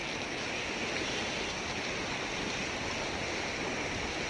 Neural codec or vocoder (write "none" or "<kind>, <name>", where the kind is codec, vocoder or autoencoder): none